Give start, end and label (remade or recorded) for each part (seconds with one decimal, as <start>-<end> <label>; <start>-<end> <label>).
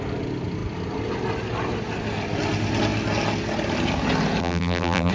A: 0.0-4.4 recorded; 4.4-5.1 remade